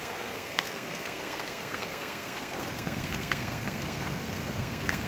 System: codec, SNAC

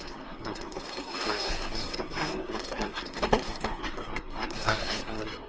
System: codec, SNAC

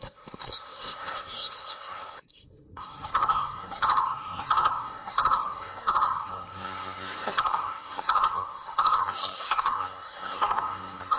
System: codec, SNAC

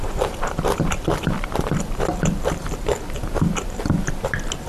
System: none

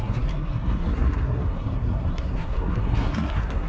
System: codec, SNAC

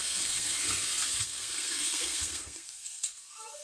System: codec, SNAC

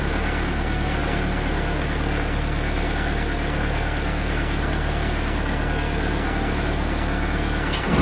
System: codec, SNAC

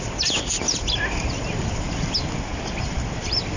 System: none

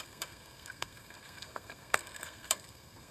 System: codec, SNAC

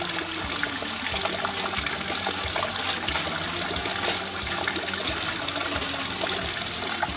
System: none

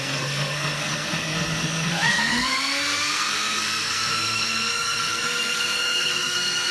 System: codec, SNAC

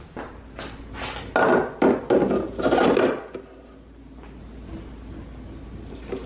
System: none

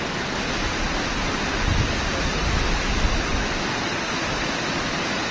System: none